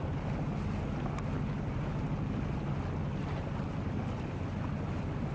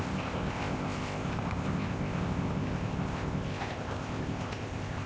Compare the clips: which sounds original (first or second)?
first